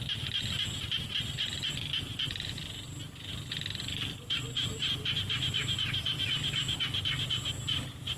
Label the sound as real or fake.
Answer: real